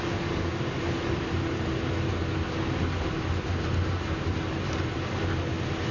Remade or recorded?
recorded